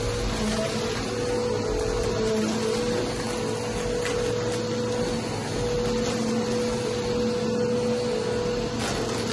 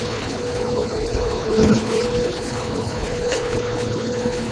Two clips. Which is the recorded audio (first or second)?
first